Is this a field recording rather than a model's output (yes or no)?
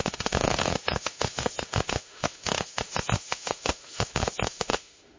no